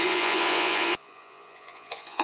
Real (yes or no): no